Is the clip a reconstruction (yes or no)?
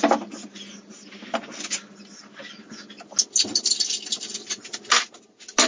no